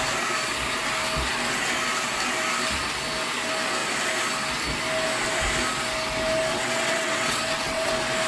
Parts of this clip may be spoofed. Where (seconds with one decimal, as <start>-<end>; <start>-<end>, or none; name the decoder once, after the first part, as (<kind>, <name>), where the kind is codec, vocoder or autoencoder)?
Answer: 6.5-7.9 (vocoder, WaveNeXt)